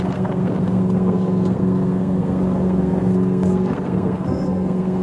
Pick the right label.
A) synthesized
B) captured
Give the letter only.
A